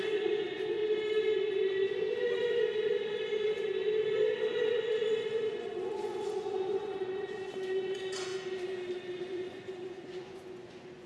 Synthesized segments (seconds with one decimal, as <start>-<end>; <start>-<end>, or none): 0.0-0.8; 4.8-8.3; 9.2-11.1